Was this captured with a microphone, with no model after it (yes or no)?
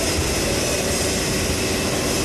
yes